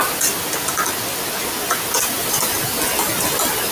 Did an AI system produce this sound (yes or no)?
no